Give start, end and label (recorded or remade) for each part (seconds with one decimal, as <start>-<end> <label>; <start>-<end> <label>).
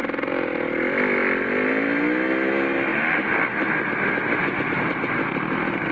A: 0.0-5.9 recorded